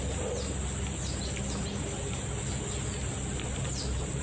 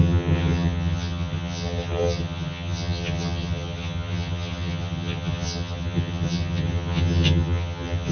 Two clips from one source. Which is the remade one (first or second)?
second